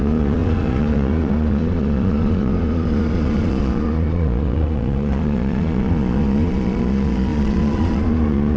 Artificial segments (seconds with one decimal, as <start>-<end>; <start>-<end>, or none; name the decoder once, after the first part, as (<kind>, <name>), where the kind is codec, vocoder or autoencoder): 0.0-8.6 (vocoder, Vocos)